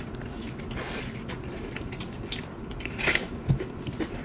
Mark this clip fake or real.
real